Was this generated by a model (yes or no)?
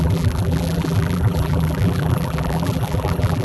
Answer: yes